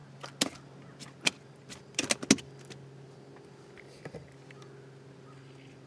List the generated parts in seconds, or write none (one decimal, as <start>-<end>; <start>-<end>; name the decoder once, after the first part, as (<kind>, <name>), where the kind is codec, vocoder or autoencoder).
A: none